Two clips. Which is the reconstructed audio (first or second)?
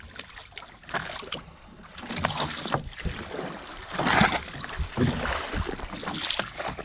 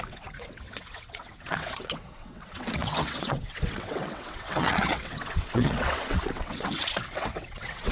second